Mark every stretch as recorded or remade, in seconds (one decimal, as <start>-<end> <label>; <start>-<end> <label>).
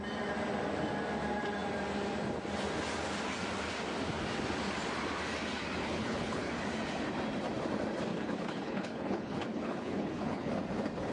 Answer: 0.0-5.8 recorded; 5.8-6.5 remade; 6.5-8.1 recorded; 8.1-10.5 remade; 10.5-11.1 recorded